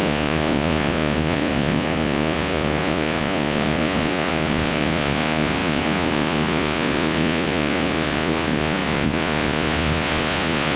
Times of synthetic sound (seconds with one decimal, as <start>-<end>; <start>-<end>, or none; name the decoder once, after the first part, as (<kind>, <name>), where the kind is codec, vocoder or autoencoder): 0.0-10.8 (vocoder, Vocos)